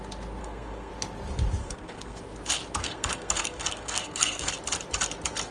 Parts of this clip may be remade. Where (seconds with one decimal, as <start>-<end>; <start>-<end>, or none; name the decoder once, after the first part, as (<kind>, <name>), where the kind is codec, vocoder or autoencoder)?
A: 0.4-0.9 (codec, SNAC); 1.6-2.2; 2.8-4.5